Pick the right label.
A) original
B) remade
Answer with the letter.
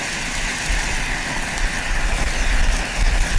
A